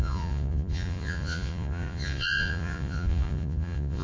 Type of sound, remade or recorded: remade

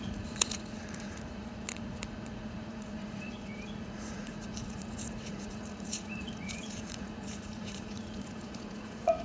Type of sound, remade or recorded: remade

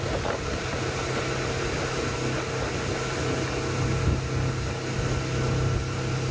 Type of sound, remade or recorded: recorded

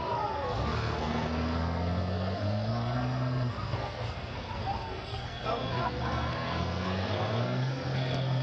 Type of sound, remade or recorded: remade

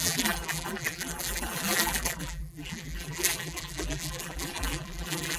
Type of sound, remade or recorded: remade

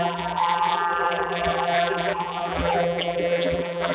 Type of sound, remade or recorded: remade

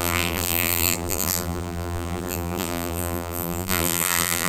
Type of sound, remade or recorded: remade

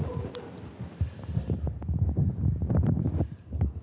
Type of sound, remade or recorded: recorded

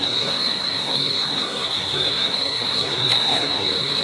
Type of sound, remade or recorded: remade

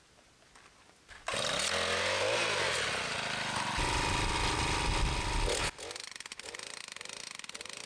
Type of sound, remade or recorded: recorded